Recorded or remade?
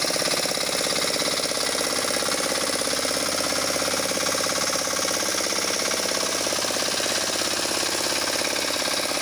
recorded